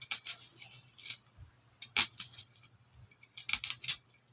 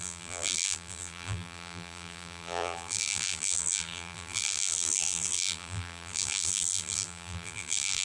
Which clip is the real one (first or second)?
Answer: first